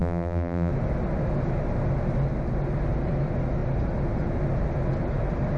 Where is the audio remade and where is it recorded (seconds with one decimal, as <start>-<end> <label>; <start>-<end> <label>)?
0.0-0.7 remade; 0.7-5.6 recorded

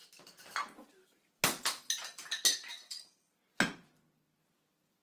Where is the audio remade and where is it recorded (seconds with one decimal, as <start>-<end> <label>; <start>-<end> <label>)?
0.0-5.0 recorded